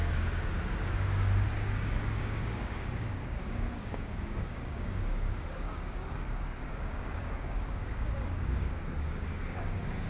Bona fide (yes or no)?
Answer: no